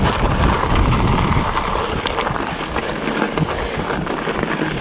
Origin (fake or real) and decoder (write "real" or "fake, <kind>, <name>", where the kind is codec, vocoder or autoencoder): real